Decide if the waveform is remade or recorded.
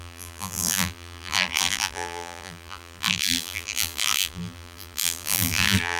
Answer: remade